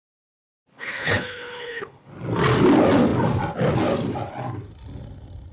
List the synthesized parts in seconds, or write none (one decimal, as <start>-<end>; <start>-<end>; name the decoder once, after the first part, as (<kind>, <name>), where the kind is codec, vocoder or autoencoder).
0.7-2.1 (codec, HILCodec)